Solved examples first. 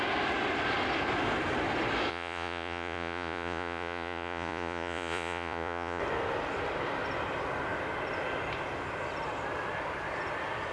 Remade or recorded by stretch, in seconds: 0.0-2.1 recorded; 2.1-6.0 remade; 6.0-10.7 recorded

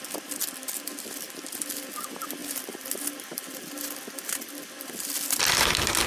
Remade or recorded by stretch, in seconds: 0.0-6.1 recorded

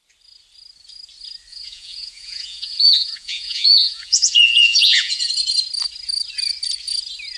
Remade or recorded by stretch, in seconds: 0.0-1.5 recorded; 1.5-5.3 remade; 5.3-7.4 recorded

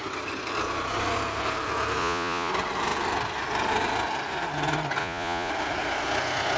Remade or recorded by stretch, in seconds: 0.0-2.0 recorded; 2.0-2.5 remade; 2.5-5.0 recorded; 5.0-5.5 remade; 5.5-6.6 recorded